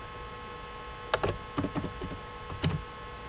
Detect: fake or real real